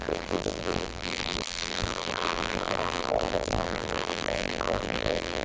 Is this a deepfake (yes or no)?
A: yes